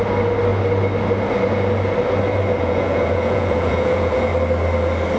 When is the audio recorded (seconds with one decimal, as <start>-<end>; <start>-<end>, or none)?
0.0-2.6; 4.3-5.2